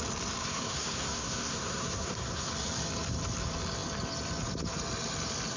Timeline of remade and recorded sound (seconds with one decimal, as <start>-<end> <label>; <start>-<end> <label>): 0.0-0.4 recorded; 0.4-2.5 remade; 2.5-5.6 recorded

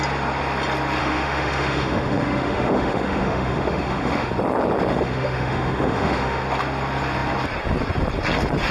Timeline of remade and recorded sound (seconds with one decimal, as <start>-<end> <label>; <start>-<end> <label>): 0.0-1.0 recorded; 1.0-4.3 remade; 4.3-4.9 recorded; 4.9-6.4 remade; 6.4-8.7 recorded

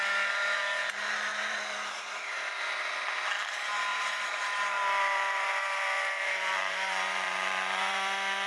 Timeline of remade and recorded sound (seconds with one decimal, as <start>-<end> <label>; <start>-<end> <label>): 0.0-1.3 recorded; 1.3-2.6 remade; 2.6-3.9 recorded; 3.9-8.5 remade

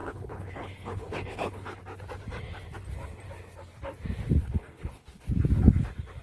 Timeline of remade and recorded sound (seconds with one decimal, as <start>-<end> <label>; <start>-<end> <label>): 0.0-1.8 remade; 1.8-4.4 recorded; 4.4-5.3 remade; 5.3-6.2 recorded

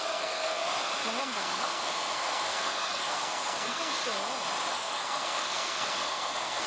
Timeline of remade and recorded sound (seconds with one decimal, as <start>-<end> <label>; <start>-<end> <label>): 0.0-0.6 remade; 0.6-1.2 recorded; 1.2-4.0 remade; 4.0-4.7 recorded; 4.7-6.7 remade